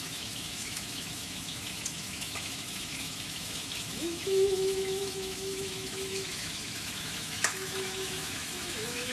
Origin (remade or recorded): remade